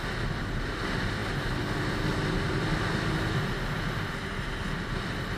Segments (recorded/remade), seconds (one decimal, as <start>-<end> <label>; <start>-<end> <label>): 0.0-5.4 recorded